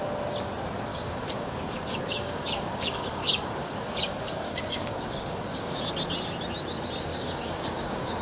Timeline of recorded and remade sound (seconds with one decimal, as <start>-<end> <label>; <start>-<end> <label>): 0.0-0.9 recorded; 0.9-5.8 remade; 5.8-7.1 recorded; 7.1-8.2 remade